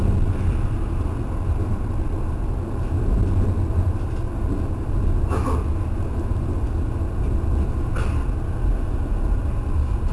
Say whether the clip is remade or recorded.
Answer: recorded